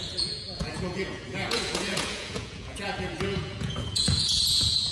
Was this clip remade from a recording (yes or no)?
yes